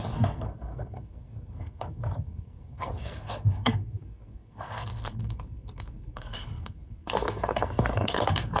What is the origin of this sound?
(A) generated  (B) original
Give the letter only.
A